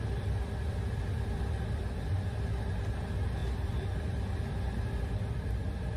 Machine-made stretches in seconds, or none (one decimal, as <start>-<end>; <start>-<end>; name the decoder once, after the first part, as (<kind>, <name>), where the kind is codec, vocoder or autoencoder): none

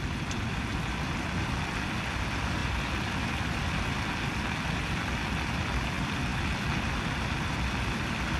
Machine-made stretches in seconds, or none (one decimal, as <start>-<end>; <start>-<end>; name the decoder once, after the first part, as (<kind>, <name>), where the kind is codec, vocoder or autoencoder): none

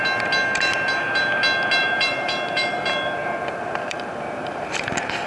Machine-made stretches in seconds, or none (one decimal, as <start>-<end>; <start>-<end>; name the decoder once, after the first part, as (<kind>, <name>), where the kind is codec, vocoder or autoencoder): 1.8-5.3 (vocoder, BigVGAN v2)

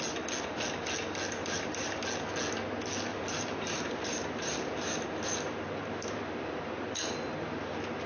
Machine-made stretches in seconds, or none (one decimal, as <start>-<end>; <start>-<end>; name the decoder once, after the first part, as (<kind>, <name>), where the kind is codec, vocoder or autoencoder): 1.4-2.0 (vocoder, BigVGAN v2); 3.1-8.1

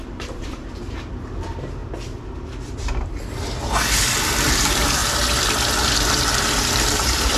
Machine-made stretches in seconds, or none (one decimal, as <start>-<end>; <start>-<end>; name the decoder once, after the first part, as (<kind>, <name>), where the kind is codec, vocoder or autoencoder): 0.0-1.8 (vocoder, BigVGAN v2); 4.4-5.0; 6.3-7.4